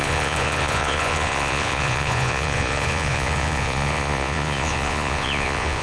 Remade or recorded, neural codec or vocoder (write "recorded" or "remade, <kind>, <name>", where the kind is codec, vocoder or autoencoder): remade, vocoder, Vocos